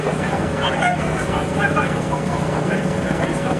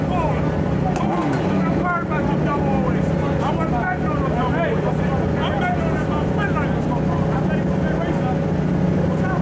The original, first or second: second